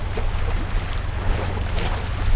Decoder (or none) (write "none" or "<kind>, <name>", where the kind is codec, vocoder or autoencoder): none